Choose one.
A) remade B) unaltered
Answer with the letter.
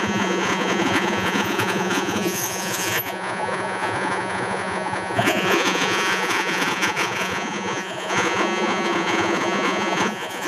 A